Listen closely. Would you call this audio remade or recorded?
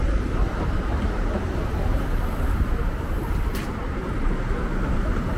remade